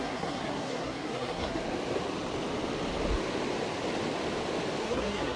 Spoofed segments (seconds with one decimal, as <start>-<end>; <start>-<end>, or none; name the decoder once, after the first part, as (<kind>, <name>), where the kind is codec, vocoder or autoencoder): 0.0-1.6 (codec, SNAC); 4.8-5.4